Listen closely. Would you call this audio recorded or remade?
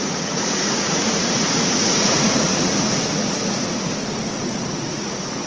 remade